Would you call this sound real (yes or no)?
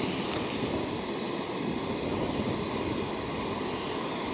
yes